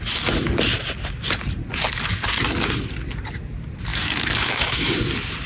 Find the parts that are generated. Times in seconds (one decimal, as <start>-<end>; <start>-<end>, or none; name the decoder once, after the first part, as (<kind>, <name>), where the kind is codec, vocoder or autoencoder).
3.9-4.9 (autoencoder, DAC-VAE)